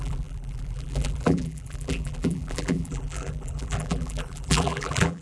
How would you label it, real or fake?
fake